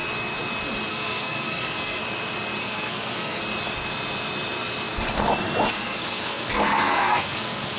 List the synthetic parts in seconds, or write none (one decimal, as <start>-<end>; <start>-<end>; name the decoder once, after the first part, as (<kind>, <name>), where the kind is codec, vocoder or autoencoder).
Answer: 0.9-2.0 (codec, SNAC); 2.6-3.4; 5.7-7.8